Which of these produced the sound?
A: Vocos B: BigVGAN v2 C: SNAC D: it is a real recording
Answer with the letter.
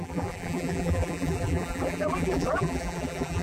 B